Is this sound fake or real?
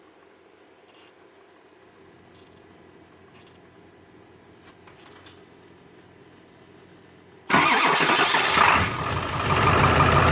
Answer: real